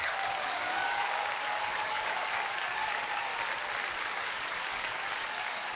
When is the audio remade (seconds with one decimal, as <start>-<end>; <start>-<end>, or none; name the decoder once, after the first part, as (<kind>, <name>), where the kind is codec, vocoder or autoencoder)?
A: 0.0-3.3 (codec, DAC); 4.0-5.8